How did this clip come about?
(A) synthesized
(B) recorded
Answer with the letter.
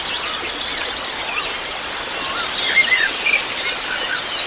B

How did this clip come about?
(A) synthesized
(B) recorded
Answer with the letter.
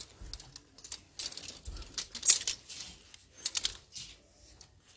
B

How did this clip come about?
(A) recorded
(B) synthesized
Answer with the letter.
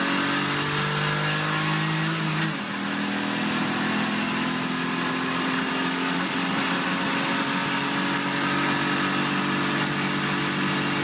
A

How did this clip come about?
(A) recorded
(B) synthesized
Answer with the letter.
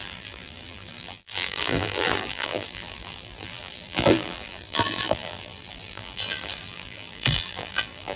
B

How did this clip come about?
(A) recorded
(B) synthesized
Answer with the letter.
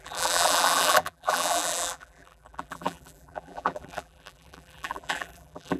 B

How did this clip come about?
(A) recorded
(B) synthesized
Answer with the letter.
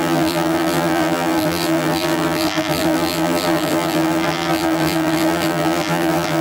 B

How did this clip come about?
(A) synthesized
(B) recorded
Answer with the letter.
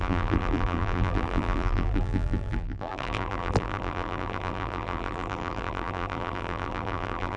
A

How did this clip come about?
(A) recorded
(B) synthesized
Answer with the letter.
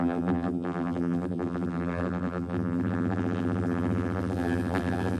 B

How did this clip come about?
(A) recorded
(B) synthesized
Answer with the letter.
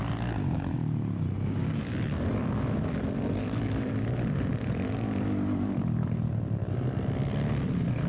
A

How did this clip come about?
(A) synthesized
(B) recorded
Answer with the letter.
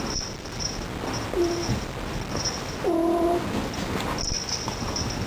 B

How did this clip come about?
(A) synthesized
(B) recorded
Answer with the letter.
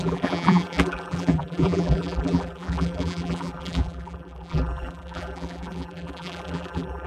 A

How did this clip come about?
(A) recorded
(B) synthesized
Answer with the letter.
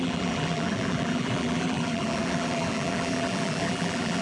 B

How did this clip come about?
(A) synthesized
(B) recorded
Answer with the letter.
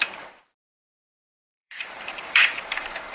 A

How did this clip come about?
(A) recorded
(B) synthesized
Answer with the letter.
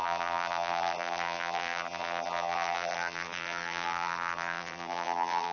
B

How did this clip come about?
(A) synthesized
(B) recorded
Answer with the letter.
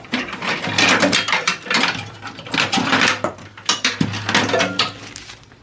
B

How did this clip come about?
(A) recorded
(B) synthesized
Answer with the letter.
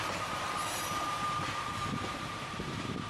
B